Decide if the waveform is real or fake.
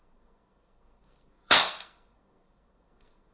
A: fake